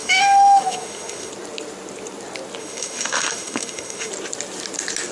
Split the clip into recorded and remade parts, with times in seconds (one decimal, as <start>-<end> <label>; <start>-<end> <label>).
0.0-1.3 remade; 1.3-2.6 recorded; 2.6-4.1 remade; 4.1-5.1 recorded